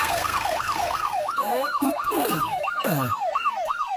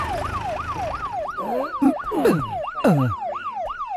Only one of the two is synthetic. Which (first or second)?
first